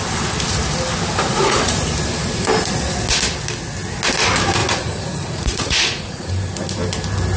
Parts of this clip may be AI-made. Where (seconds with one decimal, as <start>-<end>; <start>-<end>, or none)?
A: 1.3-1.9; 4.6-6.3